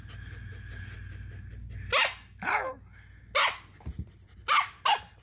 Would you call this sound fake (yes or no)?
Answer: no